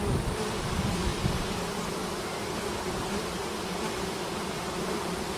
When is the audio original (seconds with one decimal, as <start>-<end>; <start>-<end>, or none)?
0.0-5.4

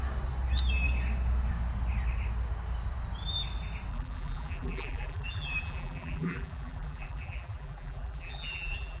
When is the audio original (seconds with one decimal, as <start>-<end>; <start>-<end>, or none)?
0.0-3.9

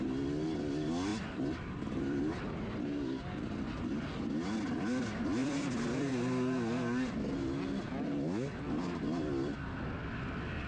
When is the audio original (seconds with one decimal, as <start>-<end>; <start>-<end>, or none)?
0.0-1.1; 2.4-5.4; 6.1-10.7

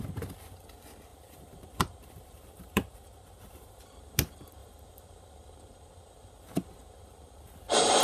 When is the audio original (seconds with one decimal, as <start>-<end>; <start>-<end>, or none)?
0.0-1.1; 4.1-4.6; 6.9-8.0

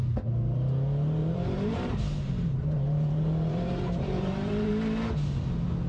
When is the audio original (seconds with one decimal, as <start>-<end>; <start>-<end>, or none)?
0.0-1.2; 4.7-5.9